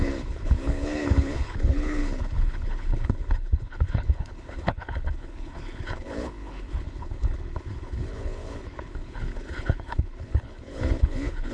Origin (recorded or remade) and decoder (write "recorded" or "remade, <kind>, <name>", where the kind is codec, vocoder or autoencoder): remade, codec, HILCodec